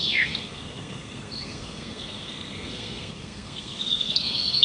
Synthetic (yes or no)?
yes